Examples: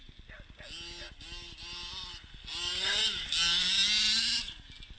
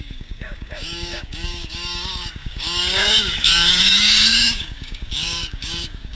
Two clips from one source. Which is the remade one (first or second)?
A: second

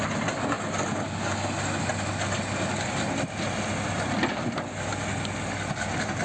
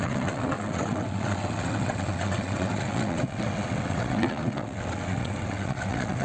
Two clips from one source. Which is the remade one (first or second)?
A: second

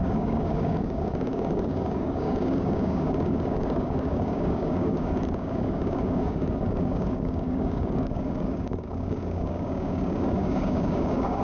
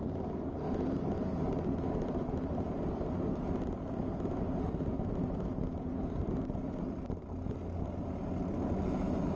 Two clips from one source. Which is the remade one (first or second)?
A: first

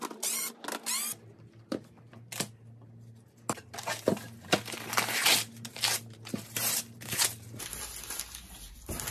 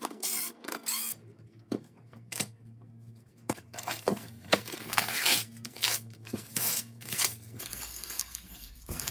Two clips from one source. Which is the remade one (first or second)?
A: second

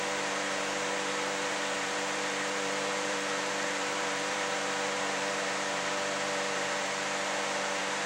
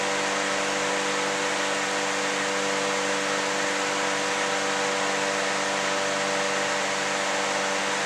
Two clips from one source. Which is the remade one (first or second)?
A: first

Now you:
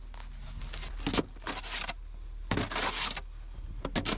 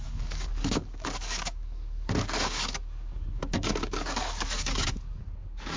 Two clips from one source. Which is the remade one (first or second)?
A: second